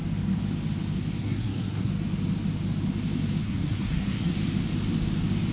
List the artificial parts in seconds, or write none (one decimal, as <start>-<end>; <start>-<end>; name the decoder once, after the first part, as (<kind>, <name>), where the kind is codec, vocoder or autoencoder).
1.2-1.9 (codec, SNAC); 3.4-4.3

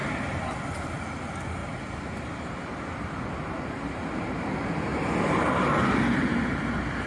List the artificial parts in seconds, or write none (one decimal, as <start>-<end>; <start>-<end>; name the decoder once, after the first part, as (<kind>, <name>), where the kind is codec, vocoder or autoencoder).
none